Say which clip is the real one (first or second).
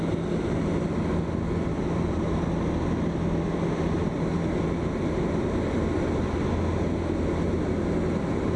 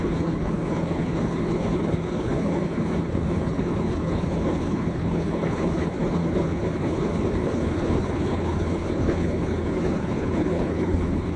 first